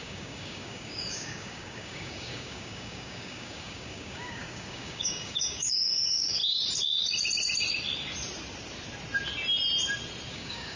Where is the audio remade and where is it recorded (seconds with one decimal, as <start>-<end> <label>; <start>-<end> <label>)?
0.0-6.4 remade; 6.4-10.3 recorded; 10.3-10.8 remade